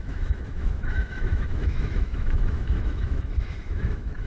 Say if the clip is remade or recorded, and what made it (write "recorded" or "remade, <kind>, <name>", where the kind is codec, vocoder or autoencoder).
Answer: remade, autoencoder, DAC-VAE